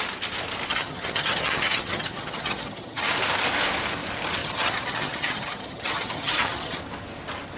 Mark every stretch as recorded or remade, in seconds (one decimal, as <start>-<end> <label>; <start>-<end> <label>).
0.0-0.7 recorded; 0.7-3.1 remade; 3.1-4.4 recorded; 4.4-6.8 remade; 6.8-7.6 recorded